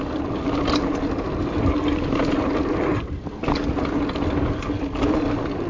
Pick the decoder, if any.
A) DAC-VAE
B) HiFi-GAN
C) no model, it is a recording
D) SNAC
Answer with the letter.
C